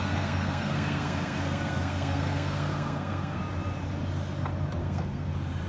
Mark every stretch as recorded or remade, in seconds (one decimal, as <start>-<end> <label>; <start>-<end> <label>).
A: 0.0-3.4 remade; 3.4-4.8 recorded; 4.8-5.3 remade; 5.3-5.7 recorded

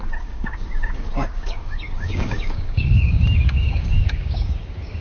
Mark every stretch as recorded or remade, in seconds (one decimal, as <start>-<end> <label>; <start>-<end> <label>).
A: 0.0-5.0 remade

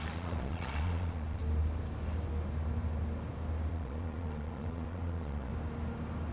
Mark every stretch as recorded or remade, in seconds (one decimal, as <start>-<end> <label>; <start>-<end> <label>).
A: 0.0-1.4 remade; 1.4-3.7 recorded; 3.7-5.5 remade; 5.5-6.3 recorded

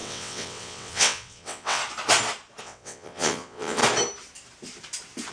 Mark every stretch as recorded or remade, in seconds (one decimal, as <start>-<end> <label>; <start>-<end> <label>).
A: 0.0-1.8 remade; 1.8-2.6 recorded; 2.6-3.8 remade; 3.8-5.3 recorded